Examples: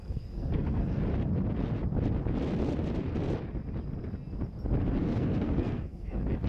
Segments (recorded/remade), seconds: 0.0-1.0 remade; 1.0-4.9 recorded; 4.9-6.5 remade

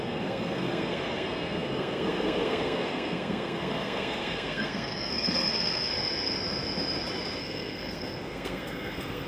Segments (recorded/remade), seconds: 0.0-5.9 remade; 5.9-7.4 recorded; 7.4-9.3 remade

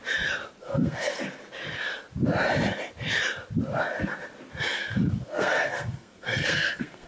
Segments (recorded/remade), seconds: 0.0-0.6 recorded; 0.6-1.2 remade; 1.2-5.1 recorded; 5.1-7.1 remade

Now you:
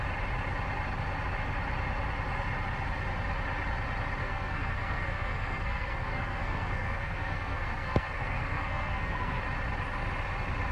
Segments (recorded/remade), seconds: 0.0-4.2 recorded; 4.2-9.4 remade; 9.4-10.7 recorded